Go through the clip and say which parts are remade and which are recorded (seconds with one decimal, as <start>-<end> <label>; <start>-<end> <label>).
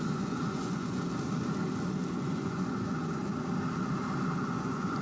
0.0-1.0 remade; 1.0-2.1 recorded; 2.1-3.2 remade; 3.2-4.4 recorded; 4.4-5.0 remade